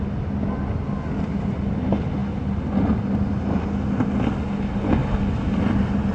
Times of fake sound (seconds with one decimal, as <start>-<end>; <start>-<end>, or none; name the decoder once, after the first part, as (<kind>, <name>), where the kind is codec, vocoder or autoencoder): none